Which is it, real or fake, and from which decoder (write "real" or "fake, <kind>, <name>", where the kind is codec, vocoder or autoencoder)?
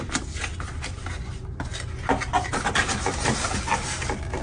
real